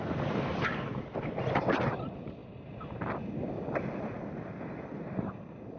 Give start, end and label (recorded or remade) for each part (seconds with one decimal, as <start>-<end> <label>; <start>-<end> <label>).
0.0-5.8 recorded